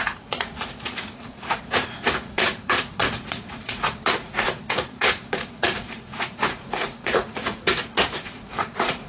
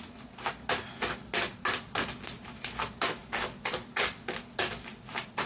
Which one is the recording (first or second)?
second